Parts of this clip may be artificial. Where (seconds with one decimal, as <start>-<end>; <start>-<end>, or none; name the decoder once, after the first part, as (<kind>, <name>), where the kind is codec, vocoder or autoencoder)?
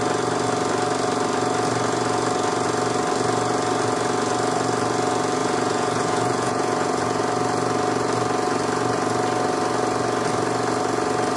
5.4-7.2 (vocoder, Vocos)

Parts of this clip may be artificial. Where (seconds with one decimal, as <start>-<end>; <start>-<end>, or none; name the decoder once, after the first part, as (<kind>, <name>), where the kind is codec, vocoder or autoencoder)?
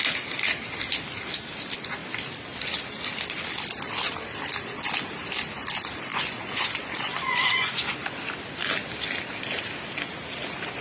6.1-8.2 (vocoder, Vocos)